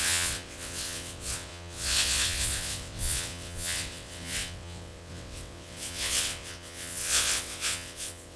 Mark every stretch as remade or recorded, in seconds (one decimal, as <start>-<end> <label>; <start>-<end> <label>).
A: 0.0-8.4 remade